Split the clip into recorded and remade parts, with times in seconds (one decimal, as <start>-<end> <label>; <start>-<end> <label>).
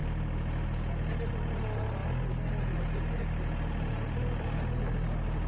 0.0-5.5 recorded